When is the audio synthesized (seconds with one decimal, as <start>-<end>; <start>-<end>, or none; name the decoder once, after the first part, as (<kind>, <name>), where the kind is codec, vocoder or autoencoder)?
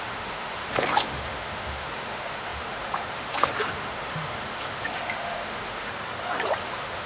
0.0-5.9 (autoencoder, DAC-VAE); 6.6-7.1